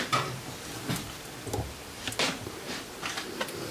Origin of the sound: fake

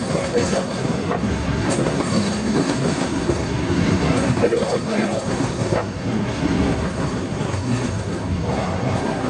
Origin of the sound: fake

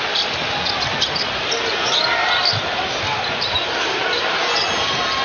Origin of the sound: real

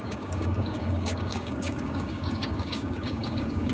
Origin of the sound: fake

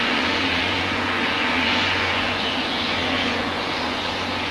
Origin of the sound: fake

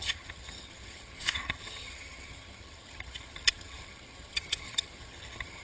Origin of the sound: fake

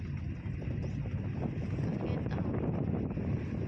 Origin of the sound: real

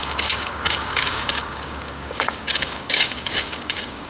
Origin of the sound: fake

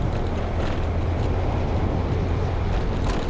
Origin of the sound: real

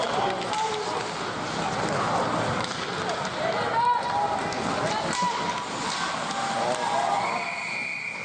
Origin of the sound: real